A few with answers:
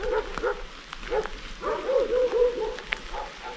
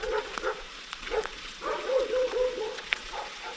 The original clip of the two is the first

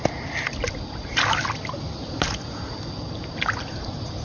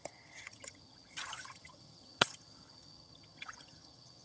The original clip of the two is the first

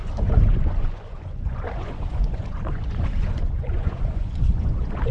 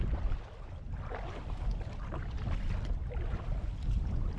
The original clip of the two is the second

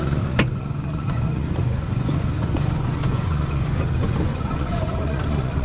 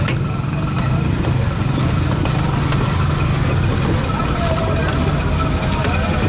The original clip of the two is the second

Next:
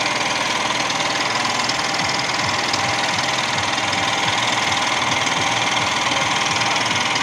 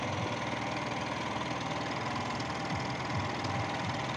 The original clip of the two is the first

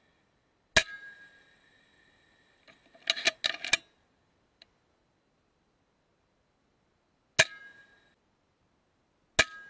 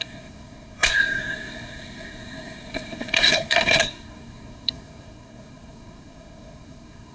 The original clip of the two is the first